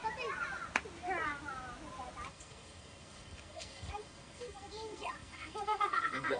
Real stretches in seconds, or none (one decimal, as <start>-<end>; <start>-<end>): 0.0-2.3